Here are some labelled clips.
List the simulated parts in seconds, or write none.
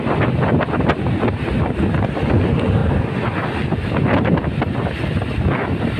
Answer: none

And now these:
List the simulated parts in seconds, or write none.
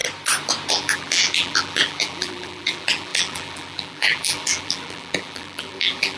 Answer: 0.7-6.2 (vocoder, BigVGAN v2)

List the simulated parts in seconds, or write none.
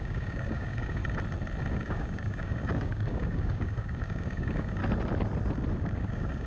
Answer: 0.0-1.0 (codec, DAC); 1.7-4.8; 5.8-6.5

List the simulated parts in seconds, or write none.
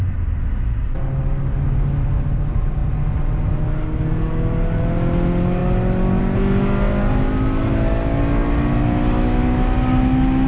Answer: none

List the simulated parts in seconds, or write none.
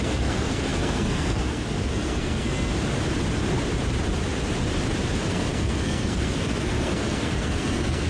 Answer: 0.0-2.7 (codec, SNAC); 5.3-8.1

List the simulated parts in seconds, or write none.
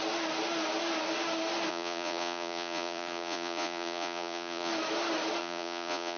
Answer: 1.7-4.7 (vocoder, Vocos); 5.4-6.2